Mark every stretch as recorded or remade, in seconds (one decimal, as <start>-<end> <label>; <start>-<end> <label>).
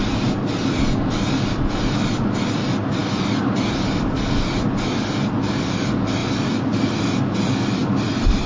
0.0-8.5 recorded